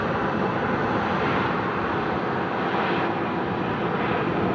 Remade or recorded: recorded